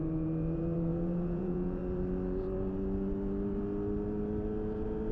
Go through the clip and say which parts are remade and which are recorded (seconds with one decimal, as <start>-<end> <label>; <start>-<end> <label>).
0.0-1.8 remade; 1.8-5.1 recorded